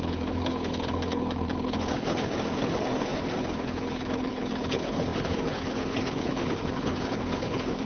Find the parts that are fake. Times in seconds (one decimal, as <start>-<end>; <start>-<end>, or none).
0.0-7.8